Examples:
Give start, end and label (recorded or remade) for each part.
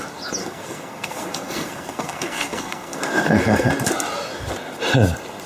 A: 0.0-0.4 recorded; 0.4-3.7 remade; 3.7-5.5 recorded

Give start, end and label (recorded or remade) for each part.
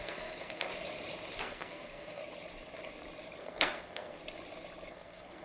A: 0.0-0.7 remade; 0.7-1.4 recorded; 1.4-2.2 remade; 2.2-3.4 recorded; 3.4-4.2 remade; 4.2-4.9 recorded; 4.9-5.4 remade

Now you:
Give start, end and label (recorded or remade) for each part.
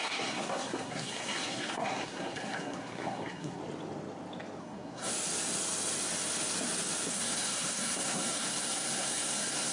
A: 0.0-3.6 remade; 3.6-4.6 recorded; 4.6-5.1 remade; 5.1-7.1 recorded; 7.1-9.7 remade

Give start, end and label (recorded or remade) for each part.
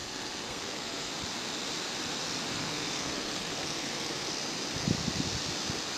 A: 0.0-1.1 remade; 1.1-2.5 recorded; 2.5-4.3 remade; 4.3-6.0 recorded